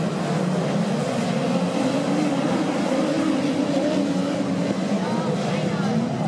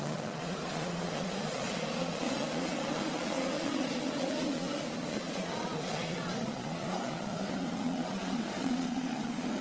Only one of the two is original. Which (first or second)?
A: first